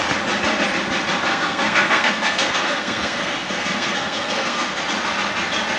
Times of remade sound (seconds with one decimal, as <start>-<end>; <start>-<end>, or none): 1.3-4.8

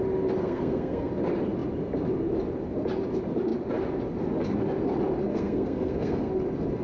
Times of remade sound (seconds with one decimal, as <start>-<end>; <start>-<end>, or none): 0.4-1.1; 5.3-6.3

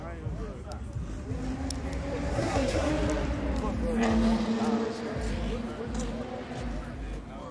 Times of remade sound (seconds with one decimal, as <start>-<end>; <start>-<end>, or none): 2.3-2.9

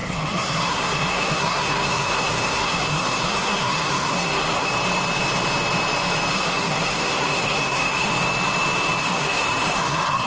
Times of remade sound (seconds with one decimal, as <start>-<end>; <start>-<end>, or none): 0.0-4.7; 6.3-8.1; 9.0-10.3